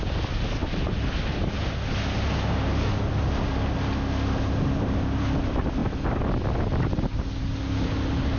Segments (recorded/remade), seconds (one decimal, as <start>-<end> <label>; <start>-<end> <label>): 0.0-8.4 recorded